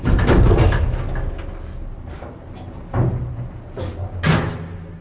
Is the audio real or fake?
real